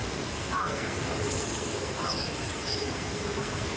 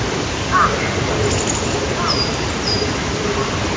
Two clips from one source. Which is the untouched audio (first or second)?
second